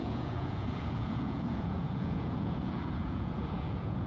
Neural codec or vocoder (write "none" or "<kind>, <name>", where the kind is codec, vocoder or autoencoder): vocoder, Vocos